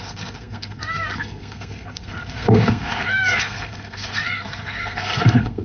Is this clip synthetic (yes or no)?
yes